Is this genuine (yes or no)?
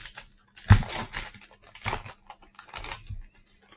yes